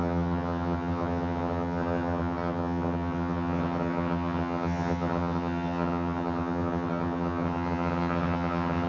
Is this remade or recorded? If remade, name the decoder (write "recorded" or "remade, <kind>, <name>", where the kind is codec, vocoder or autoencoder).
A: remade, vocoder, HiFi-GAN